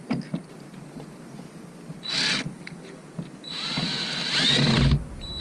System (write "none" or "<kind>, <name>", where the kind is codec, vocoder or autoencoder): none